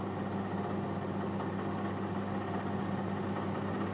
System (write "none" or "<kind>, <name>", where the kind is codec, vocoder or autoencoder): none